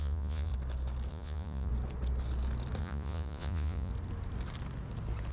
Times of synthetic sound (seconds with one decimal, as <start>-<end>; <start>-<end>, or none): 0.0-0.5; 1.1-1.7; 2.8-3.9